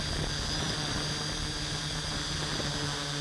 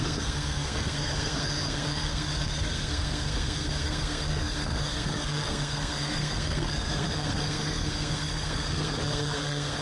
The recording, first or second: first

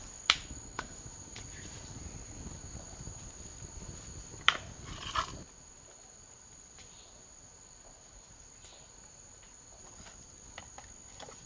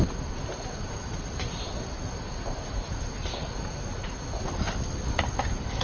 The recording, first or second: second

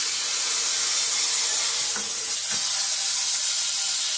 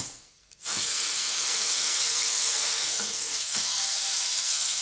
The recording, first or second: first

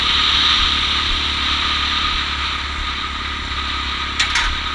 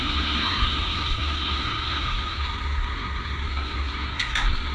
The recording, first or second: first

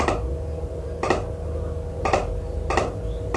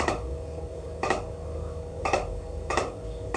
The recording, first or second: first